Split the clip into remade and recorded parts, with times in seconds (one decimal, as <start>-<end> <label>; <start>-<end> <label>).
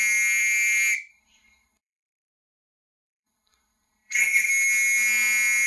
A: 0.0-1.1 recorded; 1.1-4.5 remade; 4.5-5.7 recorded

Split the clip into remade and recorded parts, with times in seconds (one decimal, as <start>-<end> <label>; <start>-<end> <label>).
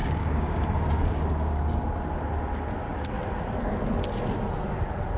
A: 0.0-1.8 remade; 1.8-5.2 recorded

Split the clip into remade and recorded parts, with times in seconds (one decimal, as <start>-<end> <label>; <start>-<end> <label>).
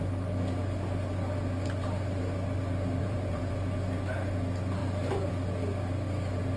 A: 0.0-3.0 recorded; 3.0-3.5 remade; 3.5-6.6 recorded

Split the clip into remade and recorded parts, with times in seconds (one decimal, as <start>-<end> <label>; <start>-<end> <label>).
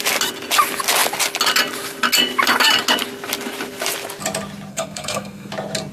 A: 0.0-4.7 recorded; 4.7-5.5 remade; 5.5-5.9 recorded